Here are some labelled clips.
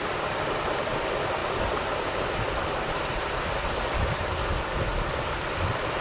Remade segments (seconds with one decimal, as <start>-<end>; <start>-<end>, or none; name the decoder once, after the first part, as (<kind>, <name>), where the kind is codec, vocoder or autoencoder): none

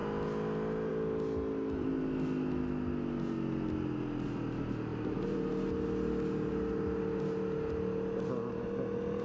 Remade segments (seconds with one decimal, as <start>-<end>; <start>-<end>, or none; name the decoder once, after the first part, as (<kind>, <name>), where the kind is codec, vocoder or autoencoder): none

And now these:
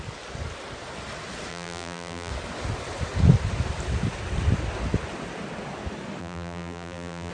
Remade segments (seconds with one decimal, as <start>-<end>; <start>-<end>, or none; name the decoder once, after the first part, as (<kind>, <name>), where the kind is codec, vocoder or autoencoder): 1.5-2.3 (vocoder, BigVGAN v2); 6.2-7.3

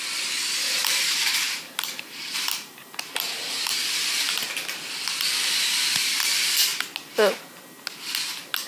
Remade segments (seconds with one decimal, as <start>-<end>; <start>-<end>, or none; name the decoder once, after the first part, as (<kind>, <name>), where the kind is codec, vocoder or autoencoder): 0.8-4.2 (vocoder, BigVGAN v2)